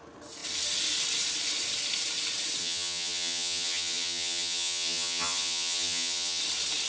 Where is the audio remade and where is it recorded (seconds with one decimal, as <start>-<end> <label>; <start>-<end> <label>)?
0.0-2.6 recorded; 2.6-6.4 remade; 6.4-6.9 recorded